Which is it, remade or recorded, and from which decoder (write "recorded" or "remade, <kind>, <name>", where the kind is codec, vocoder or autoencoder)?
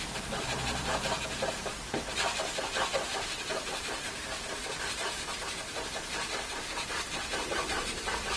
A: remade, vocoder, BigVGAN v2